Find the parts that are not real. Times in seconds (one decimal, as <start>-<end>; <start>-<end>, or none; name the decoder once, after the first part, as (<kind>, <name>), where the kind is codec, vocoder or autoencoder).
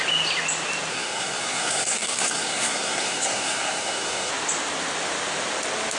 0.9-4.3 (codec, SNAC)